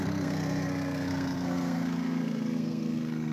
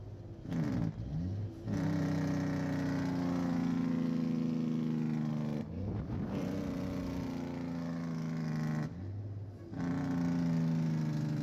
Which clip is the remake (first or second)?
first